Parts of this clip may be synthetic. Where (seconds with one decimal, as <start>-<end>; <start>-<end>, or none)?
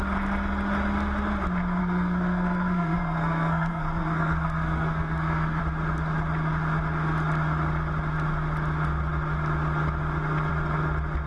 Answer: 1.8-5.6